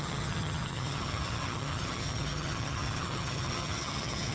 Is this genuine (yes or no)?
no